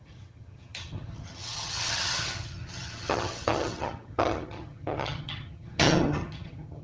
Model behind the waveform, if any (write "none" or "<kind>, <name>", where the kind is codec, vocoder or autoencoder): vocoder, HiFi-GAN